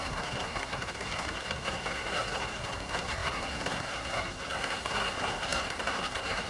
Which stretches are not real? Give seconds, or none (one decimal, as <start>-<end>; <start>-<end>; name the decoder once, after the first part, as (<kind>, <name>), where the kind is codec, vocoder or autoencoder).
0.0-6.5 (codec, SNAC)